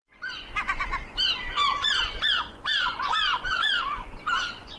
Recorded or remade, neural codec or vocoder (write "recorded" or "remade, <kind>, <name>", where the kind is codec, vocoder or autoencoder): remade, vocoder, Vocos